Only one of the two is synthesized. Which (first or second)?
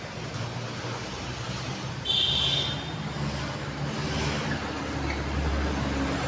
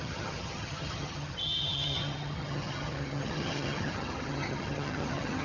second